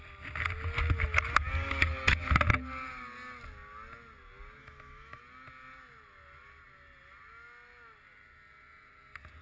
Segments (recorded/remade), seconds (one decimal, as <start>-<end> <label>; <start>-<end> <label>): 0.0-4.6 recorded; 4.6-5.2 remade; 5.2-9.4 recorded